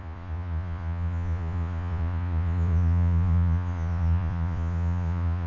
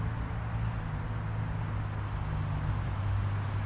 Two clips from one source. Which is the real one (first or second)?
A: second